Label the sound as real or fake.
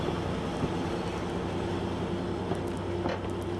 real